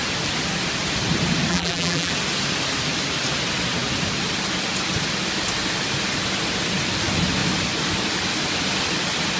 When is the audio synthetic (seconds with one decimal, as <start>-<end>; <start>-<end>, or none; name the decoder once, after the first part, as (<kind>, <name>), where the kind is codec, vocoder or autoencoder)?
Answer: 1.5-2.1 (vocoder, BigVGAN v2)